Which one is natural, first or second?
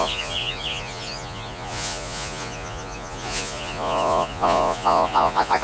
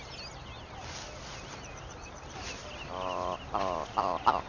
second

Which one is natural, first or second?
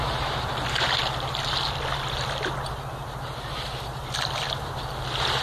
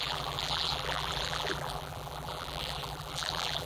first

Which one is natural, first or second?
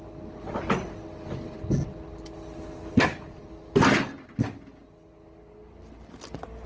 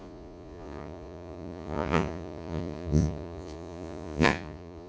first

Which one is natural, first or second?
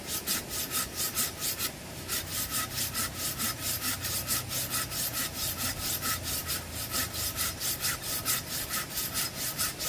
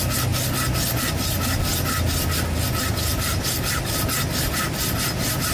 second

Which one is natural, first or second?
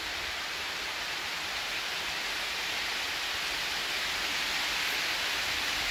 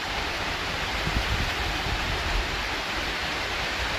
first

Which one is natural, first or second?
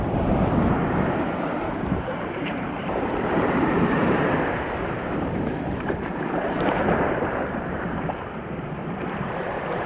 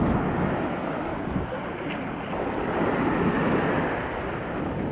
second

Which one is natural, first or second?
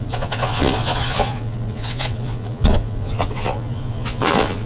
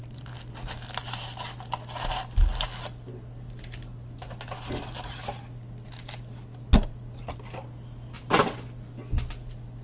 second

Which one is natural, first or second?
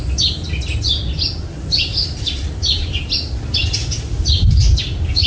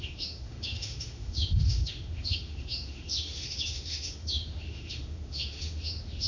first